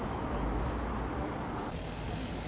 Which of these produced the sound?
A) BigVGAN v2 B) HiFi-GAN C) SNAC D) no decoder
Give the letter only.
D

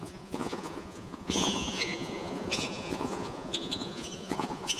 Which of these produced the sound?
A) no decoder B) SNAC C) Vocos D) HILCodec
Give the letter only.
C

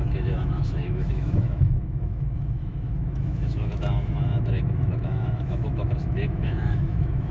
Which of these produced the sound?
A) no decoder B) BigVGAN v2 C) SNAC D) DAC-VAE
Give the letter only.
D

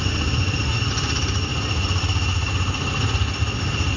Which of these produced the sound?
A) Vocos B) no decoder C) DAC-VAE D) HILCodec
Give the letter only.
B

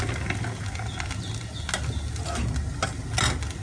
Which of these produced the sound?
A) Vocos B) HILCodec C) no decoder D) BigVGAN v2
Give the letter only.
C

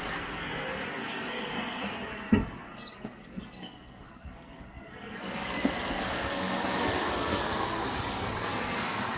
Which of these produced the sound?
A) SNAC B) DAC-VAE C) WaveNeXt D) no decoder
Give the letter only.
A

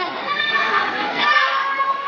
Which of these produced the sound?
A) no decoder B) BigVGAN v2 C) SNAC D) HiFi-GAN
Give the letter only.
C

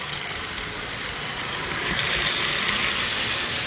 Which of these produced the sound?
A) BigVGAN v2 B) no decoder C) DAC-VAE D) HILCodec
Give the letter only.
B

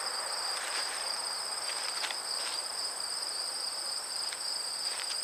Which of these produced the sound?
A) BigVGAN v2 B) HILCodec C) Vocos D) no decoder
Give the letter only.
A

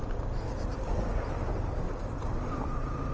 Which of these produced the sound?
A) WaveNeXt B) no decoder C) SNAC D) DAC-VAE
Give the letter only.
B